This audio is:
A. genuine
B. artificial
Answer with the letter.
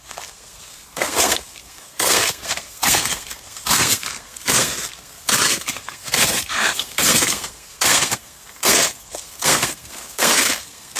B